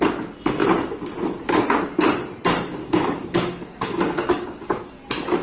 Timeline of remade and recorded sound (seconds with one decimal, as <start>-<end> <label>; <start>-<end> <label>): 0.0-2.8 recorded; 2.8-4.8 remade; 4.8-5.4 recorded